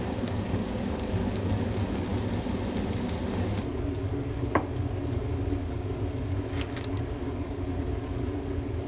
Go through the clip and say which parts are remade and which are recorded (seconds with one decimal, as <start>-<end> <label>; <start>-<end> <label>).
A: 0.0-2.1 remade; 2.1-3.7 recorded; 3.7-8.9 remade

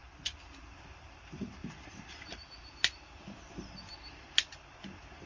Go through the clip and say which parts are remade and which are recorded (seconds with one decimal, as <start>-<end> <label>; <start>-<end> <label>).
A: 0.0-5.3 recorded

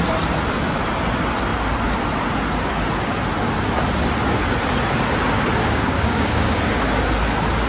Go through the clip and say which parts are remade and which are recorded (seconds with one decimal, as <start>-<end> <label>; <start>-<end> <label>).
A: 0.0-5.6 recorded; 5.6-6.6 remade; 6.6-7.7 recorded